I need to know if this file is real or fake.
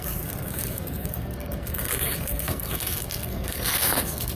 fake